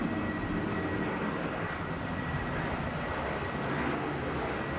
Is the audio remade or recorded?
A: recorded